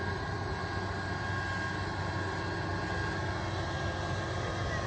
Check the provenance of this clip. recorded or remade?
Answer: recorded